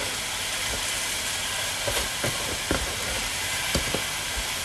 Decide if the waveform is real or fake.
fake